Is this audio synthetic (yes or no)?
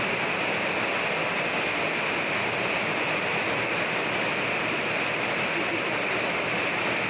no